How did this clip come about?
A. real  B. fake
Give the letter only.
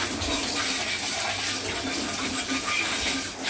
A